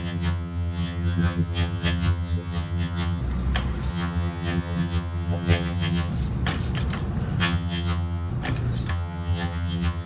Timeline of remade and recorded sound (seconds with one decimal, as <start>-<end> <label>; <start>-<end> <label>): 0.0-3.2 remade; 3.2-3.9 recorded; 3.9-6.1 remade; 6.1-7.4 recorded; 7.4-8.3 remade; 8.3-8.9 recorded; 8.9-10.1 remade

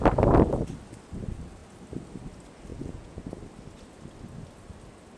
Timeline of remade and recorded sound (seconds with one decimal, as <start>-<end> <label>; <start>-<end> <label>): 0.0-2.7 recorded; 2.7-3.2 remade; 3.2-5.2 recorded

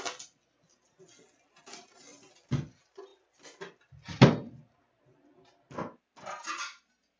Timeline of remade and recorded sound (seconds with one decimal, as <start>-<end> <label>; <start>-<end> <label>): 0.0-7.2 recorded

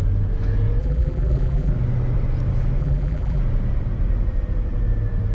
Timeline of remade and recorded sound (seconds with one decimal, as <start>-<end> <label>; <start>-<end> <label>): 0.0-0.8 recorded; 0.8-1.7 remade; 1.7-2.8 recorded; 2.8-3.4 remade; 3.4-5.3 recorded

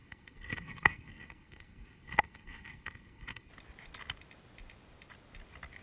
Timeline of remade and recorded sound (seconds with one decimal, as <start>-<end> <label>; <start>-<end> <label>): 0.0-3.5 remade; 3.5-5.8 recorded

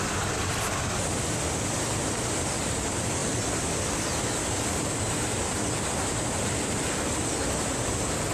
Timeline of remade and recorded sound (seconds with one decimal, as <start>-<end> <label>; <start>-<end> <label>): 0.0-8.3 recorded